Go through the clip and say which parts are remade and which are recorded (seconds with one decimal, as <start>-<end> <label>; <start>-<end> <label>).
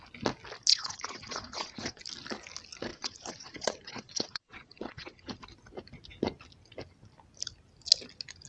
0.0-0.7 recorded; 0.7-2.0 remade; 2.0-2.9 recorded; 2.9-5.4 remade; 5.4-8.5 recorded